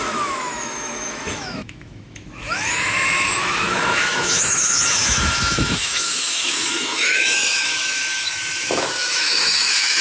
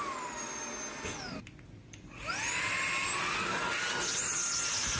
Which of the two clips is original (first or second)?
second